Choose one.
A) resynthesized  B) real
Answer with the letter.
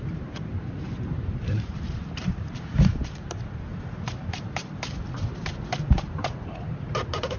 A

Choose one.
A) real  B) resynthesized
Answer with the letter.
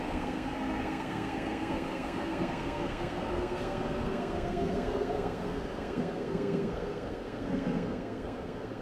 B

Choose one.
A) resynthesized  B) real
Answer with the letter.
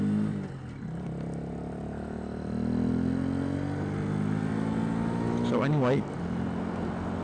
B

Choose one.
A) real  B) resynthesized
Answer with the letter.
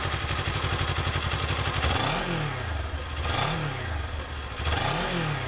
A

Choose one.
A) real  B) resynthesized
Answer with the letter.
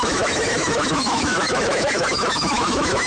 B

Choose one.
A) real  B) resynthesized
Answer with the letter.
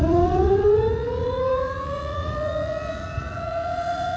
B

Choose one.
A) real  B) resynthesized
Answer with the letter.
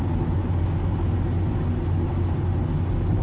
A